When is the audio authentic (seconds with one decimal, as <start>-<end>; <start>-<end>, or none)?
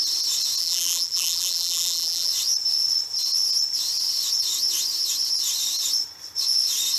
0.0-0.6; 2.3-7.0